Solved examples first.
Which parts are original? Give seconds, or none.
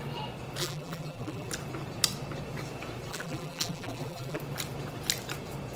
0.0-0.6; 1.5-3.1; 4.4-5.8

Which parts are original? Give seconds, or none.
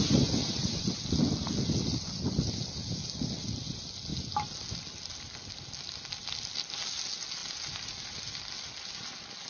0.0-0.4; 1.0-9.5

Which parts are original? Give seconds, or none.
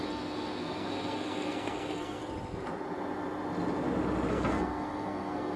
2.2-4.3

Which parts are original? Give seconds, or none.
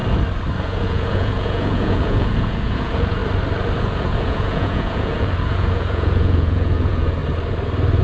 0.0-0.6; 3.2-3.8; 7.2-8.0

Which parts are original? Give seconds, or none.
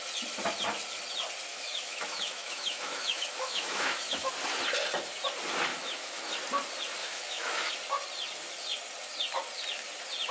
0.0-1.5; 4.3-5.7; 6.3-7.0; 7.7-10.3